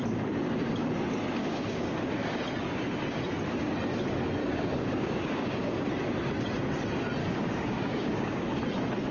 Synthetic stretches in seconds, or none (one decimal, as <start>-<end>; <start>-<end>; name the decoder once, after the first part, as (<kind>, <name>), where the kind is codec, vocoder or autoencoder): 1.4-2.4 (codec, DAC); 4.4-5.8; 7.2-8.6

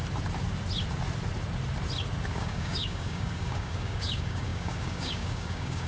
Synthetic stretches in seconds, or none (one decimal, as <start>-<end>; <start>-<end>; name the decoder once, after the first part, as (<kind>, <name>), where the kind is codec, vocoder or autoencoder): 2.4-5.9 (codec, DAC)

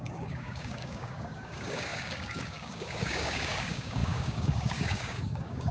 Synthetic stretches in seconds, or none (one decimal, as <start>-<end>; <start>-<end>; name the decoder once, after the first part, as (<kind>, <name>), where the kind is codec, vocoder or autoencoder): 0.0-5.7 (codec, DAC)

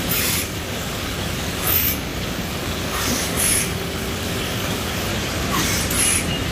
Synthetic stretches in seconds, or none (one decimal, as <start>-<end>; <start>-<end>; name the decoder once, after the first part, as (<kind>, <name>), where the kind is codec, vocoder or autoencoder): 0.0-5.1 (codec, DAC)

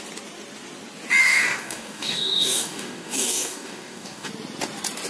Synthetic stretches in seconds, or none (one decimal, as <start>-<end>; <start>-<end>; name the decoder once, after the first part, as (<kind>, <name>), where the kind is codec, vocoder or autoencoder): 1.2-4.3 (codec, DAC)

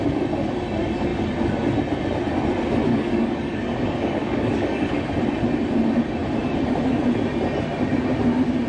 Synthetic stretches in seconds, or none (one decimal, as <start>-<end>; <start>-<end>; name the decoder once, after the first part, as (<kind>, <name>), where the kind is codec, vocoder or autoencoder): 2.9-5.1 (codec, DAC)